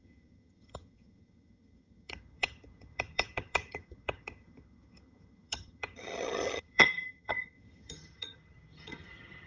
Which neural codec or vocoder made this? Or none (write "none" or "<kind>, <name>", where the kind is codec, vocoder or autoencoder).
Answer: vocoder, HiFi-GAN